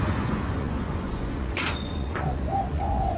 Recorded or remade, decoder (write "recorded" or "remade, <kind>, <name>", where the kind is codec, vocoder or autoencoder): remade, vocoder, Vocos